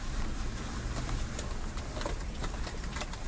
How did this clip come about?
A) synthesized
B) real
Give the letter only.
A